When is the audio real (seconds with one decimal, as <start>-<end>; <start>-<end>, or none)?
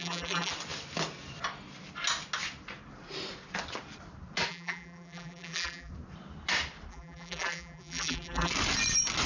0.5-4.5; 5.9-6.9; 8.5-9.3